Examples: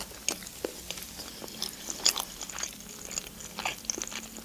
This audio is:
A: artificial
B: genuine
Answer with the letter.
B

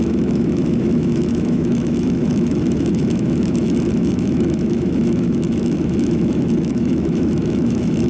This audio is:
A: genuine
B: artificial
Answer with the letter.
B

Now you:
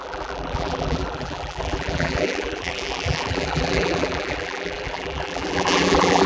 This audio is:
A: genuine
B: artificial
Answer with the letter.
B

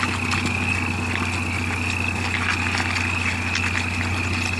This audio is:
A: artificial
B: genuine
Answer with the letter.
B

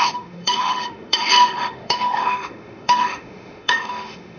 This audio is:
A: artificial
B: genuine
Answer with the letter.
A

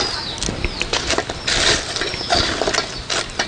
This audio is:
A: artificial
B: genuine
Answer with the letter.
B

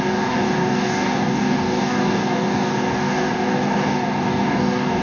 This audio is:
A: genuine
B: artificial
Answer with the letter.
B